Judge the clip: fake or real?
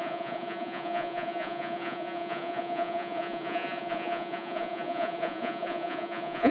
fake